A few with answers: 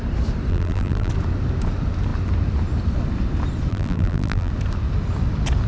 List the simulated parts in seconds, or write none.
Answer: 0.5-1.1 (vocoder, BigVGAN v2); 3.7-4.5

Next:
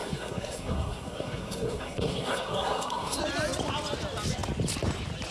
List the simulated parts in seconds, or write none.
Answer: 0.0-3.2 (codec, SNAC)